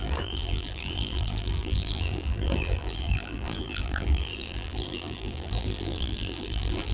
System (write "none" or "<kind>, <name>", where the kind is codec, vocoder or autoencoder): vocoder, BigVGAN v2